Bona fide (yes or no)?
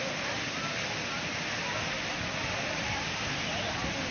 yes